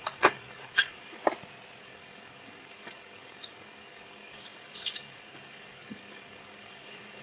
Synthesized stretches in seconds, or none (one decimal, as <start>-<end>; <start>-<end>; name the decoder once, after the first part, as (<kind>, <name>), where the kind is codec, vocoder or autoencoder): 0.0-1.2 (codec, DAC); 1.8-7.2